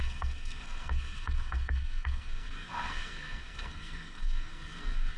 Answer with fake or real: fake